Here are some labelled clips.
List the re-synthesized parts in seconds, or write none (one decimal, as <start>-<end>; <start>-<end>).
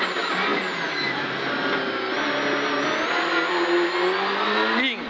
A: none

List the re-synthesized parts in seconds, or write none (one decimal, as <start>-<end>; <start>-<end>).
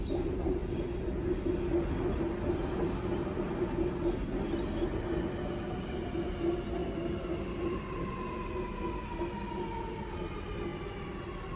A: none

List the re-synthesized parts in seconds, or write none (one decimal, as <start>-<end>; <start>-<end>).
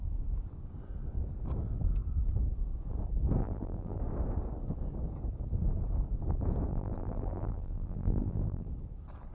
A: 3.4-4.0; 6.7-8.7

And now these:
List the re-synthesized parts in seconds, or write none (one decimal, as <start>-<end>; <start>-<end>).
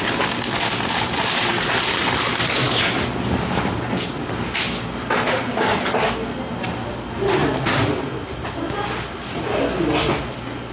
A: 2.3-2.9; 5.5-6.3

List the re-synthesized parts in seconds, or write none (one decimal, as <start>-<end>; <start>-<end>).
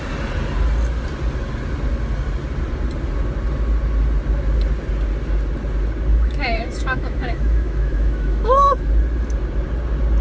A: 6.1-8.9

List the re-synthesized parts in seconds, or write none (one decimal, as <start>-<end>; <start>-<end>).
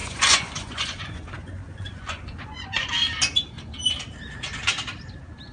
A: 0.0-2.9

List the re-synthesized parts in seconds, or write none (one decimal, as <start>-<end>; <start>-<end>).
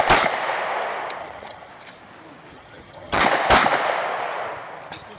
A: 1.2-1.7; 2.5-3.2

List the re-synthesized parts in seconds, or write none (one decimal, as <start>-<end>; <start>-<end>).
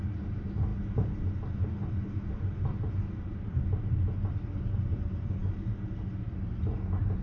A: none